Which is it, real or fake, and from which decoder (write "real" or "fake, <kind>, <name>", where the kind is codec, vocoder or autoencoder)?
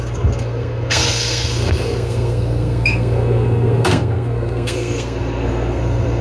fake, codec, SNAC